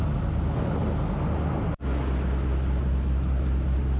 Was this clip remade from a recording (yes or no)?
no